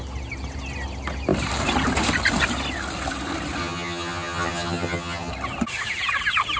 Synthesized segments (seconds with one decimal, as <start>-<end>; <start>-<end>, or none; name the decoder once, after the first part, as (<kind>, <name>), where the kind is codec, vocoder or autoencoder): 3.6-5.3 (vocoder, HiFi-GAN)